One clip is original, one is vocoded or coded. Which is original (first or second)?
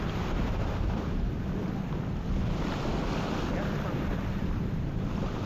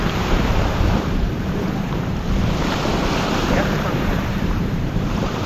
first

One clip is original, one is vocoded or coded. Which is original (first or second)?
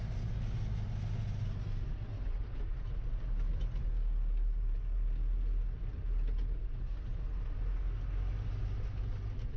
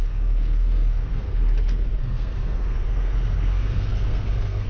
first